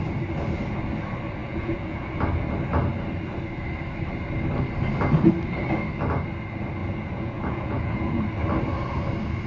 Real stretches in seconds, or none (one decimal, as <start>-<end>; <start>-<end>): 0.0-1.4; 2.1-6.8; 8.2-9.5